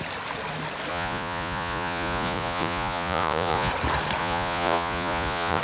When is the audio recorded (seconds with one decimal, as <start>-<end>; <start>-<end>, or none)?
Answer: 0.0-0.9; 3.7-4.2